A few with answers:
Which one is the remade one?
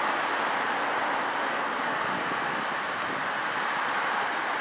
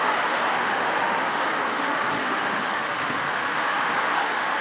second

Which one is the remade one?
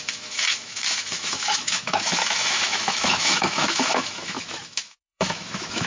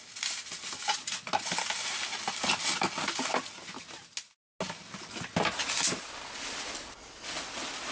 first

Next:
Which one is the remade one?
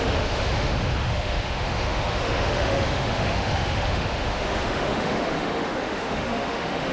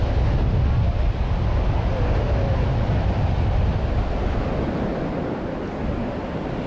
first